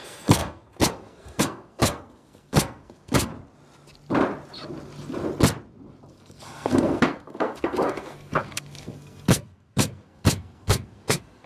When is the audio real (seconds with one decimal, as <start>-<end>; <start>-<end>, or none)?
3.3-6.1